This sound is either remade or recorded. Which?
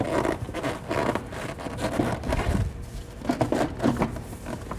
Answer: remade